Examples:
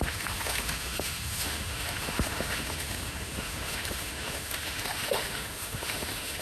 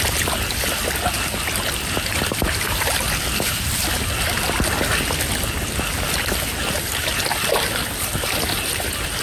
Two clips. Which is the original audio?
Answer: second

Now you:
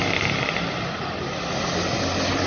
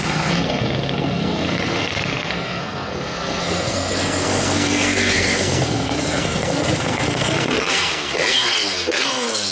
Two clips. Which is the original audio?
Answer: first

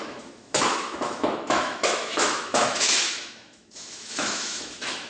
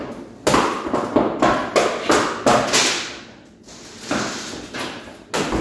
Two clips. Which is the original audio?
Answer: second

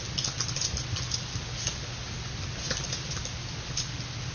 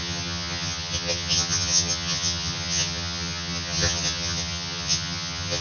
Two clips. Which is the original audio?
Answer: first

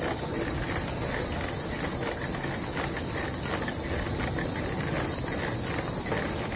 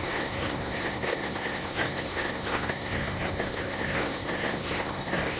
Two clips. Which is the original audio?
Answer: first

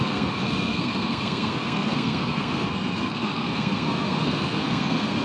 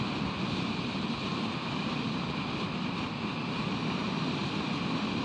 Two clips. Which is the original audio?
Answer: second